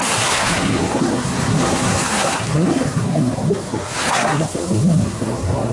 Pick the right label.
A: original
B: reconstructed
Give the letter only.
B